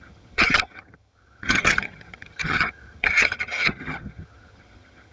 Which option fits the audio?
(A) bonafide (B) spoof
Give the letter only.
B